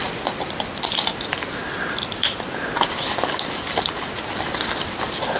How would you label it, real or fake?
real